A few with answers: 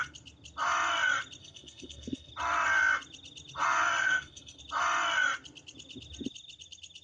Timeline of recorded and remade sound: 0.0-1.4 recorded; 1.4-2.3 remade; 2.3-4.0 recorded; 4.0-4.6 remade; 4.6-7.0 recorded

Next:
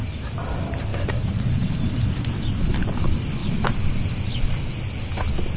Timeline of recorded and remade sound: 0.0-5.6 recorded

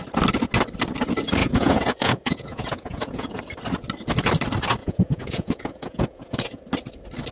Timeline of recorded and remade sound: 0.0-1.4 recorded; 1.4-3.4 remade; 3.4-4.8 recorded; 4.8-6.6 remade; 6.6-7.3 recorded

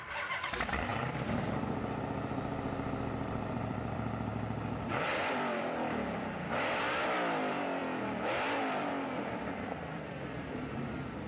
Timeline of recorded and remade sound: 0.0-4.3 remade; 4.3-5.1 recorded; 5.1-7.8 remade; 7.8-9.2 recorded; 9.2-11.3 remade

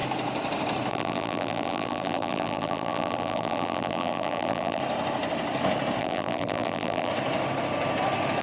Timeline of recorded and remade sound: 0.0-0.9 recorded; 0.9-4.8 remade; 4.8-6.0 recorded; 6.0-7.1 remade; 7.1-8.4 recorded

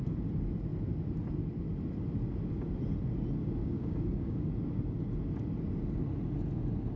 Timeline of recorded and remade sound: 0.0-3.6 recorded; 3.6-4.5 remade; 4.5-7.0 recorded

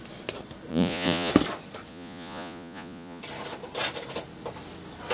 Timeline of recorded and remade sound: 0.0-0.7 recorded; 0.7-1.3 remade; 1.3-1.9 recorded; 1.9-3.2 remade; 3.2-5.1 recorded